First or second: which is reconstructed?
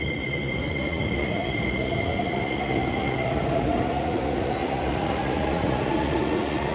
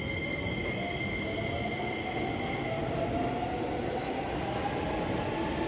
first